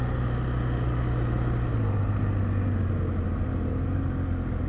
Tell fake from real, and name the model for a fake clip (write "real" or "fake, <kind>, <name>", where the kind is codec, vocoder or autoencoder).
real